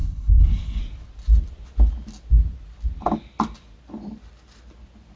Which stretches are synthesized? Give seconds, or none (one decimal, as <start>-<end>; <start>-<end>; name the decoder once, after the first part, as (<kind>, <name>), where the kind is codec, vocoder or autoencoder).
0.0-0.8 (codec, HILCodec)